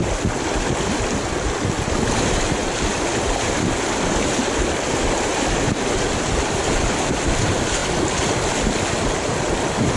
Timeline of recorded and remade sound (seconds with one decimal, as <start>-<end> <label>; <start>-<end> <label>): 0.0-10.0 recorded